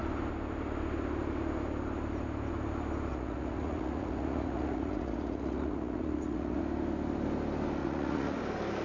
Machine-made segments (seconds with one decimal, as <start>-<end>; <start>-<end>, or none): 3.1-6.6; 7.8-8.4